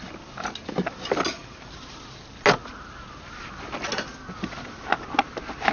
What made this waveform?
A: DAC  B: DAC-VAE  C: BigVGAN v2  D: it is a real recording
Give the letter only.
D